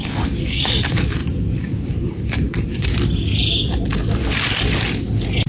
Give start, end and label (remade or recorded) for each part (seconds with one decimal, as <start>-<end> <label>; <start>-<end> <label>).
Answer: 0.0-2.9 remade; 2.9-5.5 recorded